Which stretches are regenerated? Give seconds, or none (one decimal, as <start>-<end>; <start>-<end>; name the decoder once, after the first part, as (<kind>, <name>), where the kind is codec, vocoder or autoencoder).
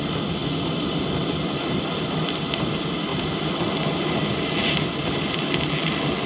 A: 0.4-1.8 (vocoder, BigVGAN v2)